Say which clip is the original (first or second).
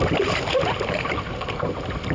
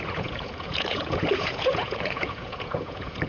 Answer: first